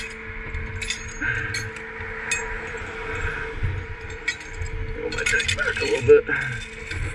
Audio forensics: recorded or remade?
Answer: recorded